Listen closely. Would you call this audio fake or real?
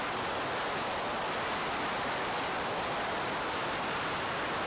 real